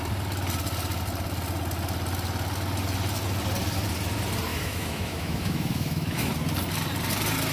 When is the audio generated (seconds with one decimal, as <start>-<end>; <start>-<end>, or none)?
4.5-6.3